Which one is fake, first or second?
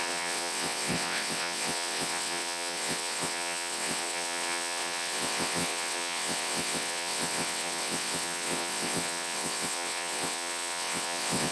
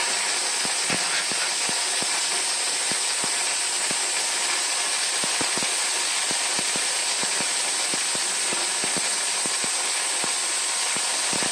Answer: first